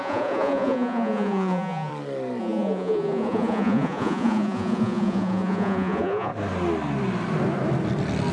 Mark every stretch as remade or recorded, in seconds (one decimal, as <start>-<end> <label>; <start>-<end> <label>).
0.0-1.9 remade; 1.9-2.4 recorded; 2.4-6.3 remade; 6.3-8.3 recorded